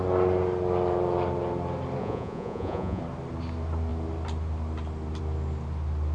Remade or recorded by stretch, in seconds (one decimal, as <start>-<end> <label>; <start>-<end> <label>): 0.0-2.0 recorded; 2.0-3.0 remade; 3.0-6.1 recorded